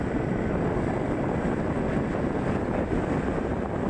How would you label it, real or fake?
real